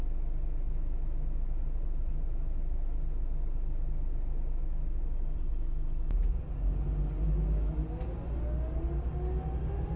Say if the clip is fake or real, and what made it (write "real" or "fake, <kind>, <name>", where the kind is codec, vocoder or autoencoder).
real